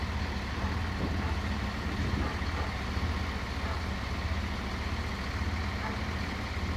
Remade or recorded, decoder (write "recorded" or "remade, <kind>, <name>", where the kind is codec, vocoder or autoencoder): recorded